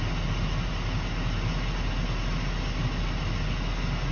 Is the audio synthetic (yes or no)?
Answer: no